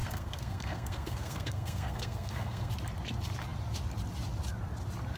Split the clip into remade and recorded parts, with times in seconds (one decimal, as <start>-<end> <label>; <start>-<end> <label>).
0.0-2.7 remade; 2.7-5.2 recorded